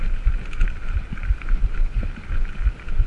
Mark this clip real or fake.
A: real